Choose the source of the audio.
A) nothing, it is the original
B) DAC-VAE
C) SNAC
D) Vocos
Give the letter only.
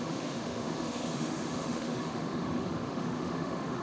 B